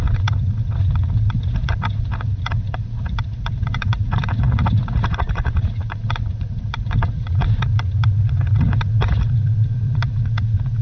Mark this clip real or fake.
fake